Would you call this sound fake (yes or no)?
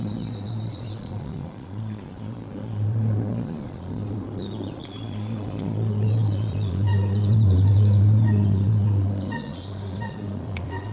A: yes